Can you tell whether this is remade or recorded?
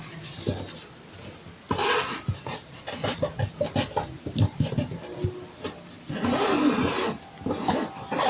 recorded